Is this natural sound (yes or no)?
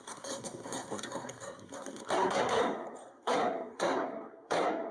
no